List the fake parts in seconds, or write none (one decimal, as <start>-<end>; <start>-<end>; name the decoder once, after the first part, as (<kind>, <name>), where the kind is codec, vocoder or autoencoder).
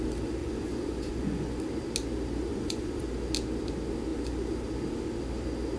0.4-1.6 (vocoder, Vocos); 2.5-3.1